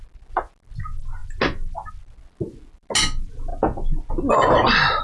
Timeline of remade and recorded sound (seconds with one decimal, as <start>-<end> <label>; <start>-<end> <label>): 0.0-5.0 recorded